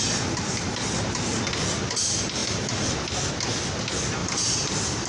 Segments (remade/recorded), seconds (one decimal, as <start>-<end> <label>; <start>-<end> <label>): 0.0-4.2 recorded; 4.2-5.1 remade